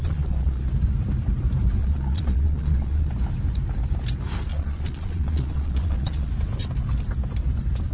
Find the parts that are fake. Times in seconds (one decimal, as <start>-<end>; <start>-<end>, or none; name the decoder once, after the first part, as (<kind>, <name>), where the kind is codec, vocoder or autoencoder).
0.0-0.6 (vocoder, Vocos); 1.8-3.1; 4.5-6.3